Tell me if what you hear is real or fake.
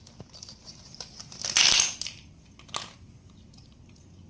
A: real